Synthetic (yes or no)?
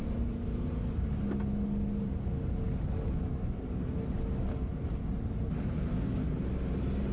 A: no